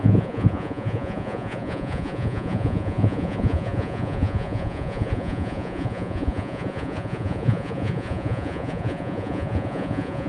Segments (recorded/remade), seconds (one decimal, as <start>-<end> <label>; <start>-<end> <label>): 0.0-10.3 remade